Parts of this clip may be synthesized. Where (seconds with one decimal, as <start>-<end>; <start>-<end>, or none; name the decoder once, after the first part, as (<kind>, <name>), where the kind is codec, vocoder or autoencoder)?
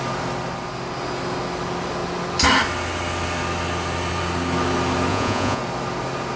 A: 5.1-5.6 (vocoder, Vocos)